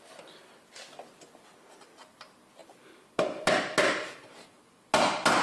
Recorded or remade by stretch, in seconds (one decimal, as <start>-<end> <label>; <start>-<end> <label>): 0.0-5.4 recorded